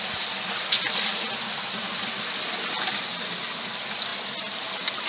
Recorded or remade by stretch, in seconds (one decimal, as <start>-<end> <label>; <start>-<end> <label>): 0.0-5.1 recorded